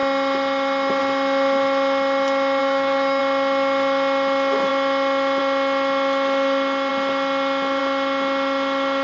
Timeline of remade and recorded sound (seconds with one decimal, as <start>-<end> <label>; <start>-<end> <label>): 0.0-2.6 recorded; 2.6-3.2 remade; 3.2-9.0 recorded